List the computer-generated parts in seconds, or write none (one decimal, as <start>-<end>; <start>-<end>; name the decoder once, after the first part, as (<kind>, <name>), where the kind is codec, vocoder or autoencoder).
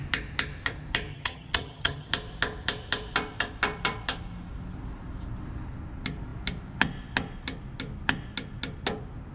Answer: 1.1-2.1 (vocoder, HiFi-GAN)